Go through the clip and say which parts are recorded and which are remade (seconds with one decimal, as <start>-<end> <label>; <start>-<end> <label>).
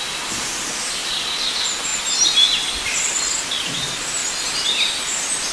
0.0-5.5 recorded